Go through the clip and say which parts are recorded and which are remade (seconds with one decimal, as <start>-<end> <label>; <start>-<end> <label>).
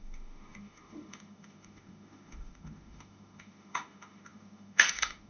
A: 0.0-5.3 remade